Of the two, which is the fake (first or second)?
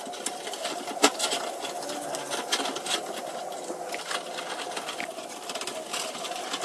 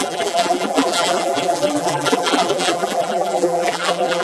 second